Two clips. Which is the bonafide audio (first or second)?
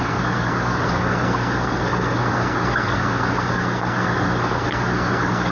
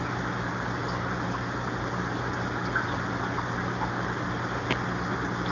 second